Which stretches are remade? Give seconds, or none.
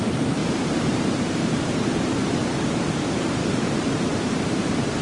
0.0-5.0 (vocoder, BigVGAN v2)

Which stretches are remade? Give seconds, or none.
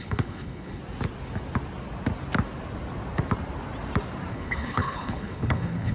0.0-0.8 (codec, HILCodec); 4.3-5.9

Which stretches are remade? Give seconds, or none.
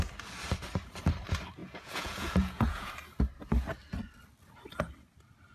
1.6-2.9 (vocoder, Vocos)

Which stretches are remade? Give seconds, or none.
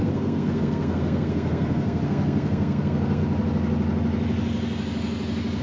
0.0-3.2 (codec, SNAC)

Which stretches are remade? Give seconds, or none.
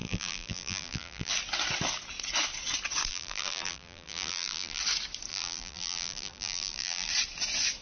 0.0-1.3 (vocoder, BigVGAN v2); 3.1-4.8; 5.3-7.1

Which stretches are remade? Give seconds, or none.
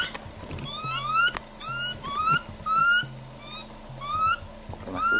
none